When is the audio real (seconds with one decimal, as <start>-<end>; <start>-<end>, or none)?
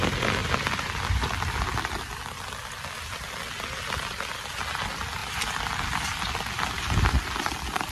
0.0-0.4; 2.6-5.2; 6.0-7.9